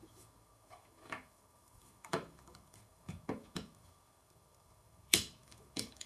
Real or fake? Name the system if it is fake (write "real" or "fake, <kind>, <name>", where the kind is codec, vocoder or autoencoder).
fake, autoencoder, DAC-VAE